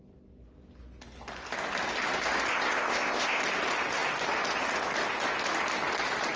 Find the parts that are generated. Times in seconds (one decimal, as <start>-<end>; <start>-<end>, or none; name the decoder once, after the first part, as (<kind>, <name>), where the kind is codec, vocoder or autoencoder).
2.5-3.4 (codec, ZipCodec)